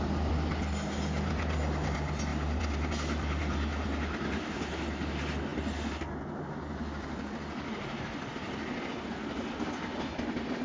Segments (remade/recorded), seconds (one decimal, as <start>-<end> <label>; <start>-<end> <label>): 0.0-10.6 recorded